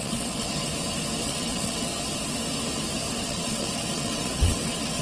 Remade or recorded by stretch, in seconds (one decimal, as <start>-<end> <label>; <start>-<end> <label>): 0.0-0.7 remade; 0.7-1.2 recorded; 1.2-1.9 remade; 1.9-3.1 recorded; 3.1-5.0 remade